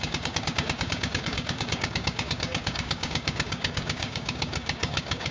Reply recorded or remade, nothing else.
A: remade